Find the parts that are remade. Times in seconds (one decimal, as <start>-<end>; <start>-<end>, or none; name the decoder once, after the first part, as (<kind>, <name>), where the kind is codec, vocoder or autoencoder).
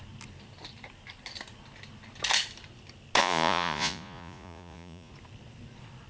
3.2-5.1 (vocoder, Vocos)